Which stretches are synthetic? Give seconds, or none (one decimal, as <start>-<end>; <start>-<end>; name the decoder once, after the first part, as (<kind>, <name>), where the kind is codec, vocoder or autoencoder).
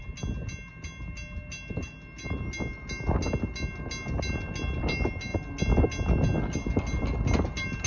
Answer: none